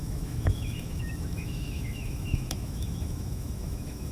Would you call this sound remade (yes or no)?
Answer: yes